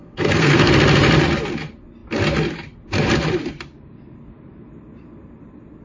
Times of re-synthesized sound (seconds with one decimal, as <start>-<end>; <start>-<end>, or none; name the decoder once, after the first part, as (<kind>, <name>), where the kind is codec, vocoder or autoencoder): 0.0-0.7 (codec, SNAC)